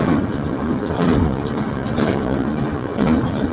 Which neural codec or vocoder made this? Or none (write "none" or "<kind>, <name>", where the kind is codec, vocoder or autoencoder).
vocoder, Vocos